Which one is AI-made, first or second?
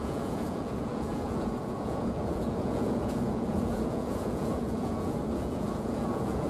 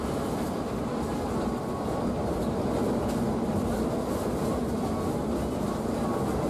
first